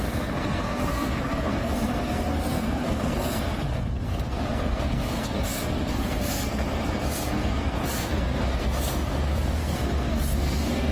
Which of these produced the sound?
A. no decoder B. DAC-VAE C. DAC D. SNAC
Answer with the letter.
D